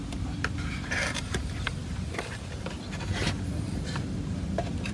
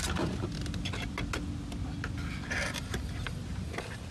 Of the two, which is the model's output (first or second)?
first